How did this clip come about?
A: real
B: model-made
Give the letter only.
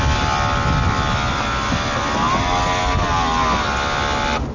A